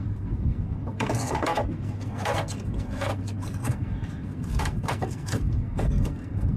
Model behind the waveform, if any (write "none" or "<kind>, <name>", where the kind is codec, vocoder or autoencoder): codec, SNAC